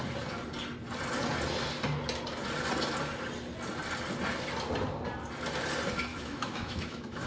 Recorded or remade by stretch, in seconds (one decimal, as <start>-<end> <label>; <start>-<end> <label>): 0.0-6.1 recorded; 6.1-7.3 remade